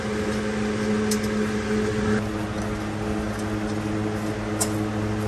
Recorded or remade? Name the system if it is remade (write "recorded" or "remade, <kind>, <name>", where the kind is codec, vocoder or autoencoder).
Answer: recorded